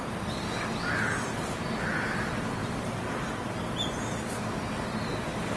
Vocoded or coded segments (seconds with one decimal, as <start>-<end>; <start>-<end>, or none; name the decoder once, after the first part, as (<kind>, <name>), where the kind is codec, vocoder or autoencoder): 2.6-3.6 (vocoder, BigVGAN v2)